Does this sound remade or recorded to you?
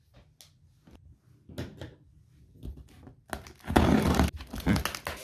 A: recorded